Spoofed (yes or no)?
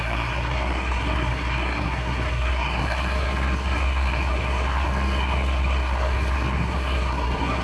yes